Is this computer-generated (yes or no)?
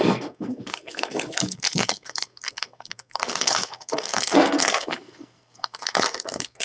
yes